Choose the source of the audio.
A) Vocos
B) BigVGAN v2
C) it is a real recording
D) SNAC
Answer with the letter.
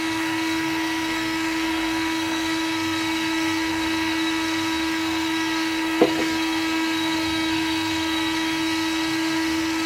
D